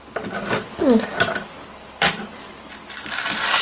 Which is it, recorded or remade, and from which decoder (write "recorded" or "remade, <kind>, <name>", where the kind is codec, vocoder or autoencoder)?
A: recorded